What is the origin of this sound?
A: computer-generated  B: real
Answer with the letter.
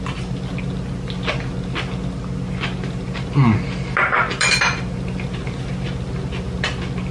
B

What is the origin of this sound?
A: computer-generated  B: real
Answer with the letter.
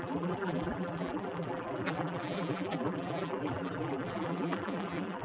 A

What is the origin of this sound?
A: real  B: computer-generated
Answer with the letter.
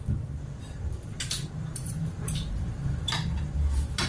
B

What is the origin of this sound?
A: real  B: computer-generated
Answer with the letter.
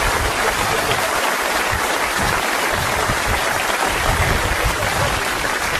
A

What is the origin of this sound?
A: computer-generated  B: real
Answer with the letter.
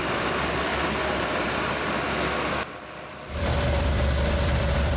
A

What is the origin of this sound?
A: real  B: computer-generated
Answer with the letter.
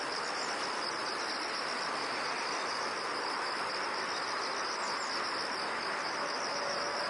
A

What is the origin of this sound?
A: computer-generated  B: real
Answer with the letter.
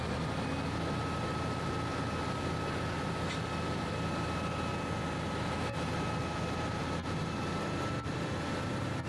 B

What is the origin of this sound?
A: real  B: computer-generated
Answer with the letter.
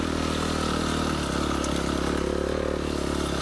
A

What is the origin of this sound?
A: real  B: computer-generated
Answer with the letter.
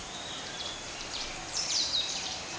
B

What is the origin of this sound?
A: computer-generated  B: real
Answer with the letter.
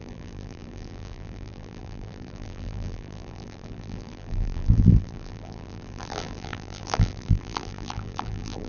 A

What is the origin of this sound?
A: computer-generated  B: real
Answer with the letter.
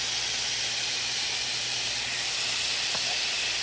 B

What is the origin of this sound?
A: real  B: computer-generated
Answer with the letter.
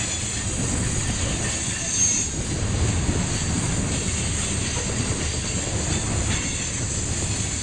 A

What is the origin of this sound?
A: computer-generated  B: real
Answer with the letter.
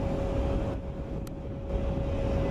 B